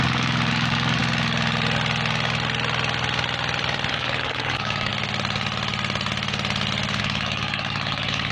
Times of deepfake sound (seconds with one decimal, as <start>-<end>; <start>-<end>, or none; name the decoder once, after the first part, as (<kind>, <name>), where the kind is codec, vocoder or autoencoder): 0.0-1.0 (codec, DAC); 3.9-4.9; 7.0-8.3